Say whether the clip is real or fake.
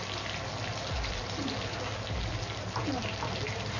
real